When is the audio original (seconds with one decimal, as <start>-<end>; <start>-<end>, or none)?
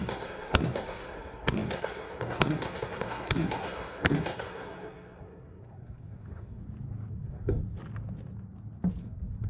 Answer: 6.6-7.1; 7.6-9.0